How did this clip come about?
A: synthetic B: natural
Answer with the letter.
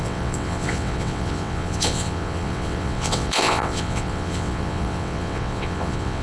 A